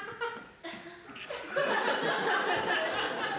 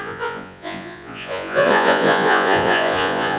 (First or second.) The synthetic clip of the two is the second